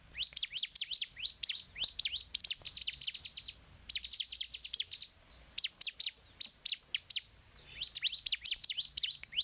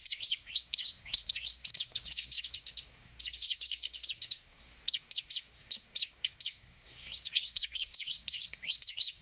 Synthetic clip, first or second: second